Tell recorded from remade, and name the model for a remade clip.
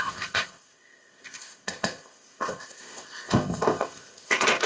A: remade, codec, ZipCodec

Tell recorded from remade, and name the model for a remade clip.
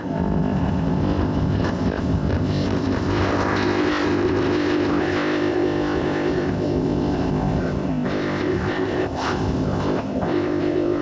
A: remade, codec, ZipCodec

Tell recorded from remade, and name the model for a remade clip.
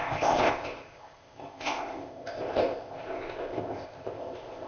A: remade, codec, ZipCodec